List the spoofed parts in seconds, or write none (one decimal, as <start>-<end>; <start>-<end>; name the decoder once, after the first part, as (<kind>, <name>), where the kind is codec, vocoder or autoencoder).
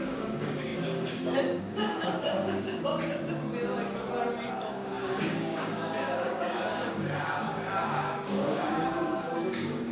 0.0-2.9 (codec, DAC); 4.5-9.9